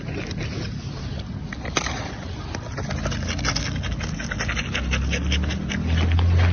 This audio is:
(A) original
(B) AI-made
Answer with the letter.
A